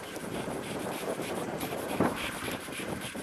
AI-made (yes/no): yes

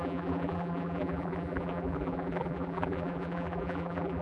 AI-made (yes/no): yes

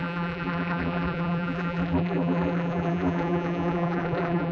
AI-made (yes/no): yes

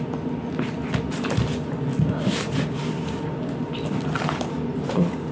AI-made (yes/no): no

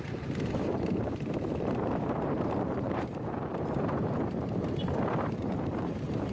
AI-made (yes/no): yes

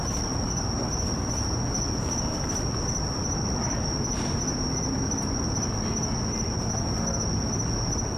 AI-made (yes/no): no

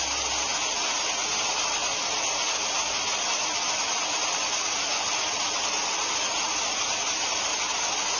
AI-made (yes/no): no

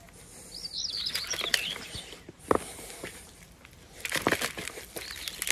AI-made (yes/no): no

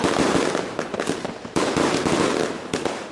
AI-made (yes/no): no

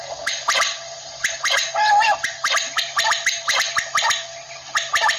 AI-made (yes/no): yes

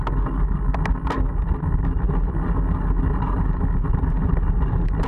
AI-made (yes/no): no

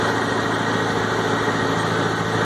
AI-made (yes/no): no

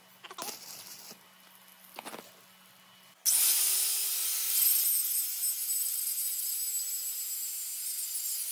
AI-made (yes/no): no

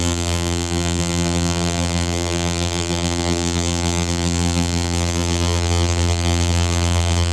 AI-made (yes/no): yes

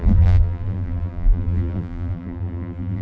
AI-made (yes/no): yes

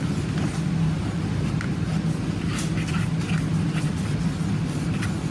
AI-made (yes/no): no